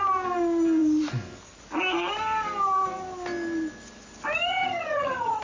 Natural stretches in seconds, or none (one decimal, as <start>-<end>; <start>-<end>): 0.0-4.5